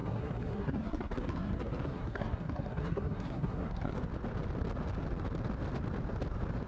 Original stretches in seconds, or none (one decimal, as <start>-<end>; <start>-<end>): 4.0-6.7